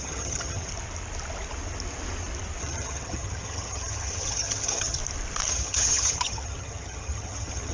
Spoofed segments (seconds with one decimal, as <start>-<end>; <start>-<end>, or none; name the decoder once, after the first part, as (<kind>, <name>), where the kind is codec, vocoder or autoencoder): 0.0-0.7 (vocoder, HiFi-GAN); 2.6-5.0; 5.5-7.7